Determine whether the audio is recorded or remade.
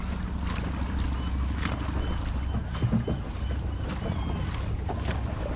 recorded